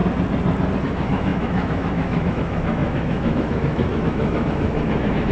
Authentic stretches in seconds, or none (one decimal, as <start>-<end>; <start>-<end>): 0.0-0.8

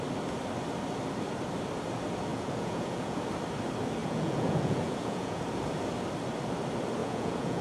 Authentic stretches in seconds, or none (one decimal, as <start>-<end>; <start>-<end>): 0.0-2.3; 3.2-4.0; 5.4-7.0